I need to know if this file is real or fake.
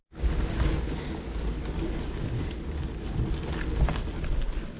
real